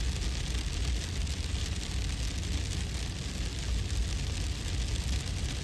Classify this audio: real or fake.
real